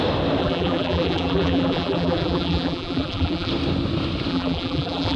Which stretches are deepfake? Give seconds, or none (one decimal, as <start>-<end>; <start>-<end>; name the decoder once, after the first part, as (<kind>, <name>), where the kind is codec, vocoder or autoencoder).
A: 0.4-3.5 (vocoder, BigVGAN v2); 4.3-5.2